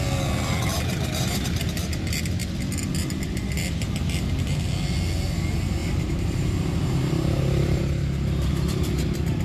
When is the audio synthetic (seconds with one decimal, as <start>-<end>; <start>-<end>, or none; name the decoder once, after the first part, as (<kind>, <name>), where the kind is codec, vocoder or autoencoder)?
0.7-1.6 (vocoder, BigVGAN v2); 5.8-7.8